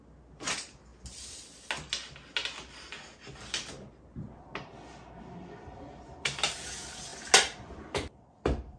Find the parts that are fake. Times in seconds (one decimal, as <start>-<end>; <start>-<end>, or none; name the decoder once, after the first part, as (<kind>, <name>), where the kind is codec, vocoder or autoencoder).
none